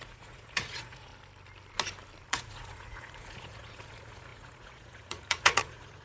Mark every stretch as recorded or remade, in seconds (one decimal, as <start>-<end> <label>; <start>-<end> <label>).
0.0-1.1 remade; 1.1-2.3 recorded; 2.3-6.0 remade